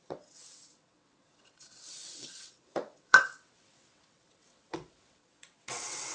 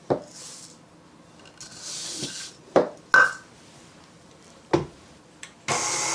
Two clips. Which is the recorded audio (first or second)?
second